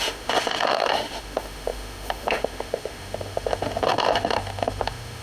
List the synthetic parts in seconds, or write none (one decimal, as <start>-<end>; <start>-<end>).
0.0-5.2